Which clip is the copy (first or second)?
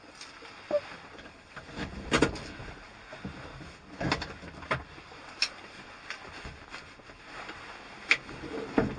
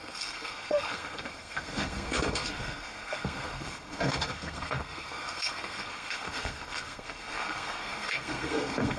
second